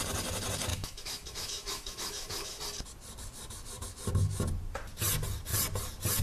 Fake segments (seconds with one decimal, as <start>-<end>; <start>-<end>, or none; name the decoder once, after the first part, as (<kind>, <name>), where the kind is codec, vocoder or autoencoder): 0.7-2.6 (autoencoder, DAC-VAE)